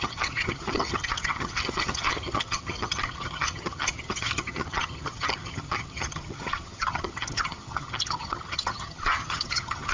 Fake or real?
fake